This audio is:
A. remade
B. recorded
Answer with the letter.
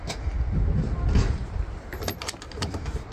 B